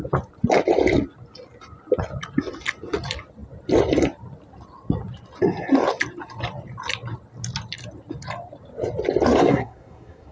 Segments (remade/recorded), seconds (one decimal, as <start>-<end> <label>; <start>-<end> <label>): 0.0-9.4 recorded; 9.4-10.3 remade